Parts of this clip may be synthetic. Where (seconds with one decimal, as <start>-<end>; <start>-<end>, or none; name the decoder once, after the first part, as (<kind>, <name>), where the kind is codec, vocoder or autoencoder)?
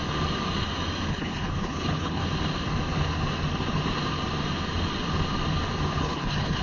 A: 1.1-2.2 (codec, HILCodec); 6.0-6.6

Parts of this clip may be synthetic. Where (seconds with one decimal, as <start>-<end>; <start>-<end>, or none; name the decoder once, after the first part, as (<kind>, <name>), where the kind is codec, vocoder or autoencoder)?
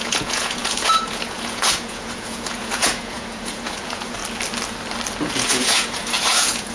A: 0.0-4.2 (vocoder, Vocos); 5.2-6.7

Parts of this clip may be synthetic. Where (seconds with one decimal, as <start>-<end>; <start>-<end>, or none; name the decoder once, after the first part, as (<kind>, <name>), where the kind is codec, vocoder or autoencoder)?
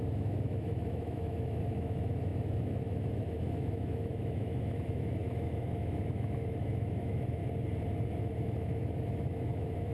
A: 0.0-7.4 (autoencoder, DAC-VAE); 8.2-9.9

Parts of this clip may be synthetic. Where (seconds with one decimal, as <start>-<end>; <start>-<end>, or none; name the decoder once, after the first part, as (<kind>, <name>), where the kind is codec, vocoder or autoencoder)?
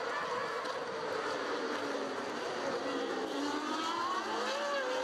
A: 0.4-3.4 (vocoder, BigVGAN v2)